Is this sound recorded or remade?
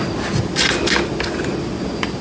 recorded